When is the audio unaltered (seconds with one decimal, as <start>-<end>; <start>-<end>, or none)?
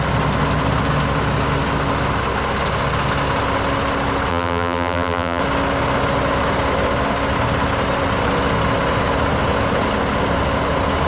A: 0.0-4.3; 5.4-11.1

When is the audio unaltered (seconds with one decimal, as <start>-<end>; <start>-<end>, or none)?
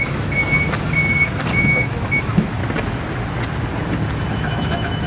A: 0.4-1.6; 2.6-4.3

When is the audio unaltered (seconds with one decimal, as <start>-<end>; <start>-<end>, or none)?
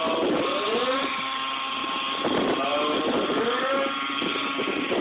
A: 0.0-5.0